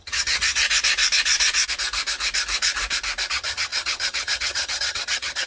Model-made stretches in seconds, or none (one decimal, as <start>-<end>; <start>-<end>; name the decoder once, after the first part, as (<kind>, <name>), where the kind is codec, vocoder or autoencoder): 0.0-0.6 (vocoder, HiFi-GAN); 3.3-5.5